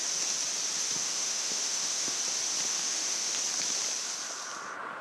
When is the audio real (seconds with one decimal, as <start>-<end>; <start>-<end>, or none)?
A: 0.0-1.0; 2.2-2.7; 3.4-5.0